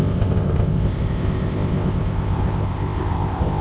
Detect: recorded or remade remade